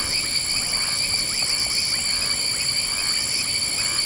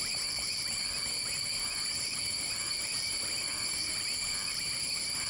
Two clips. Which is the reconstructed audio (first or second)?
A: second